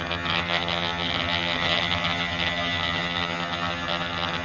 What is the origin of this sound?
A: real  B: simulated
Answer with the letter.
B